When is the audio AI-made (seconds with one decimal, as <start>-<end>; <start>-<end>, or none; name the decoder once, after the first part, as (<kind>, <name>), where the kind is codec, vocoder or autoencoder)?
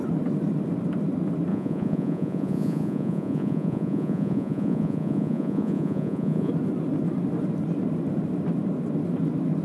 1.5-6.5 (vocoder, Vocos)